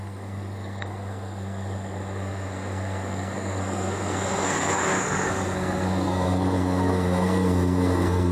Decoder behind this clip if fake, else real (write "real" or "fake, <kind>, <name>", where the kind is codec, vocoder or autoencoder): fake, codec, SNAC